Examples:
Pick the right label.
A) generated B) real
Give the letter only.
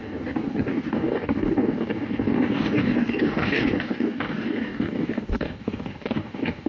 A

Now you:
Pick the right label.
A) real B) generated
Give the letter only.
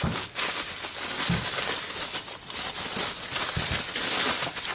A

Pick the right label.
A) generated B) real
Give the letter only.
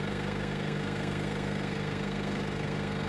A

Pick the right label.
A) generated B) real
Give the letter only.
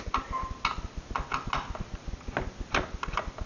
B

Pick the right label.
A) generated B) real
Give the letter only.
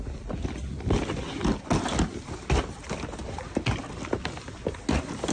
B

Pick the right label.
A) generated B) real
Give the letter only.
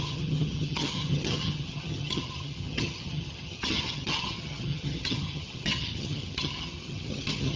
A